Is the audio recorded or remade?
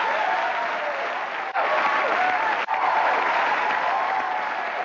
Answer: recorded